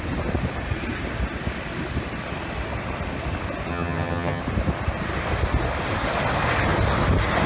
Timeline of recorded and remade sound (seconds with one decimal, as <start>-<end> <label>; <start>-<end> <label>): 0.0-3.7 recorded; 3.7-4.4 remade; 4.4-7.5 recorded